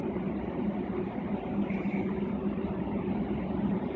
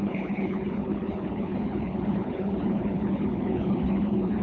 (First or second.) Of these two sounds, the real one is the first